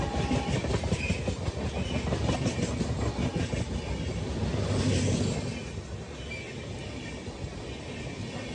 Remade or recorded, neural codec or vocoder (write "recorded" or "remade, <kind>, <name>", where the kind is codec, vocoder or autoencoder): recorded